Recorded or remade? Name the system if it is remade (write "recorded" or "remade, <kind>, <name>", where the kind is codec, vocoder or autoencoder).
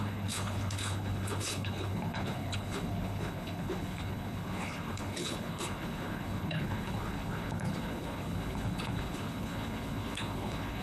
remade, codec, HILCodec